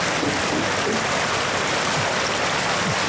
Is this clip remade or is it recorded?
recorded